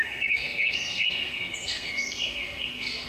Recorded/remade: remade